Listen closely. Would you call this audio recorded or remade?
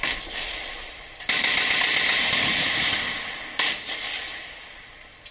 recorded